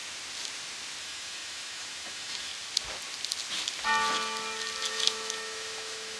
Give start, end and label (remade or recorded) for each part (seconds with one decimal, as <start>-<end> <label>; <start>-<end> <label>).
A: 0.0-1.0 recorded; 1.0-2.5 remade; 2.5-4.9 recorded; 4.9-6.2 remade